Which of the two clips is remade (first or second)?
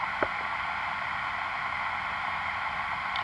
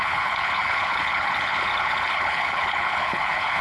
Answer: second